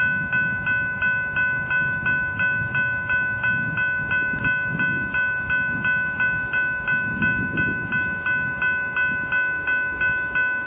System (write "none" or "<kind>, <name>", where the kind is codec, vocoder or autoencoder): none